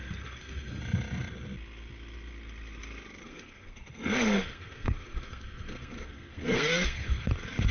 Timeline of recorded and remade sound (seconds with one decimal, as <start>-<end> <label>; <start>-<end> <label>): 0.0-0.8 remade; 0.8-3.2 recorded; 3.2-7.3 remade; 7.3-7.7 recorded